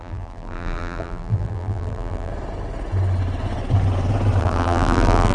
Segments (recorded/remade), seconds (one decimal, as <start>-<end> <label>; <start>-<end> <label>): 0.0-2.3 remade; 2.3-4.4 recorded; 4.4-5.3 remade